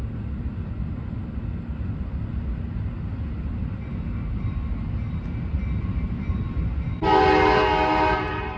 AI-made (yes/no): no